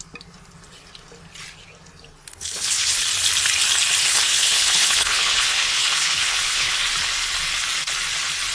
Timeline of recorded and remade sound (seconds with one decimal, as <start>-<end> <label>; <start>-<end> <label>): 0.0-2.3 recorded; 2.3-3.0 remade; 3.0-4.0 recorded; 4.0-6.8 remade; 6.8-8.5 recorded